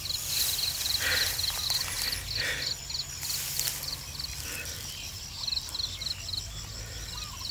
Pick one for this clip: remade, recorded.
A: recorded